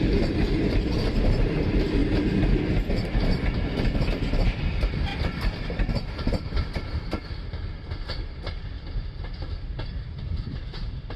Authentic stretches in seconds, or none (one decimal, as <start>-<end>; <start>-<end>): 2.0-2.9